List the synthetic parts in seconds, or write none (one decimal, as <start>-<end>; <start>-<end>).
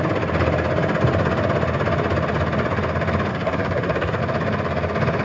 3.3-4.2